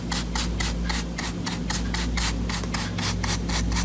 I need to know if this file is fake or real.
real